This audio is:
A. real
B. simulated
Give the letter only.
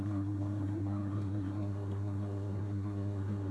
B